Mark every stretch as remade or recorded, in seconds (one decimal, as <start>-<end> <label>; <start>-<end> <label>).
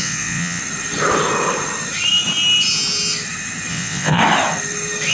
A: 0.0-0.6 remade; 0.6-3.7 recorded; 3.7-4.2 remade; 4.2-5.1 recorded